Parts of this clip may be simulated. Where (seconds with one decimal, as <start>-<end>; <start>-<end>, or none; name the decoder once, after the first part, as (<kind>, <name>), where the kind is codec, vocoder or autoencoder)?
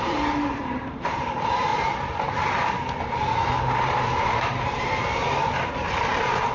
0.0-1.7 (vocoder, BigVGAN v2); 5.6-6.5